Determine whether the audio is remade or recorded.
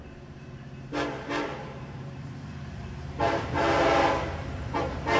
remade